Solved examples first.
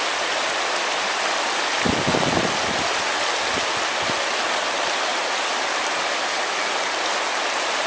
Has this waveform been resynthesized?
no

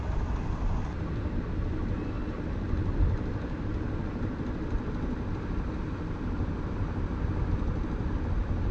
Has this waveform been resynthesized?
no